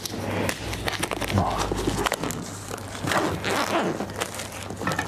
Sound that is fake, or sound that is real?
real